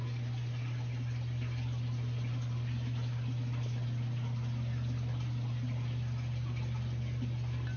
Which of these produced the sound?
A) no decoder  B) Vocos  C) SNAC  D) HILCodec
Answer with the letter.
A